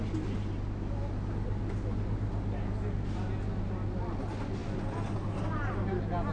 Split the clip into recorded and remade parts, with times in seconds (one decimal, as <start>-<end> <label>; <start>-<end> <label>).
0.0-6.3 recorded